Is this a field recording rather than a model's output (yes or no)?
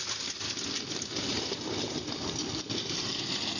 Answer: yes